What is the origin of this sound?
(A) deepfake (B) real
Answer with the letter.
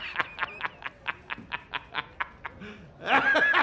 B